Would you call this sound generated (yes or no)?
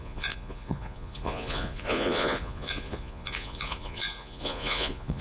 yes